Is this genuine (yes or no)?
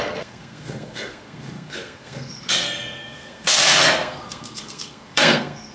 no